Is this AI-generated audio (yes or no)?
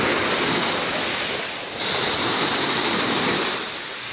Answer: no